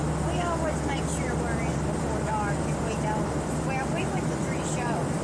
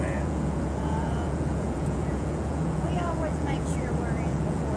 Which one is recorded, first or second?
first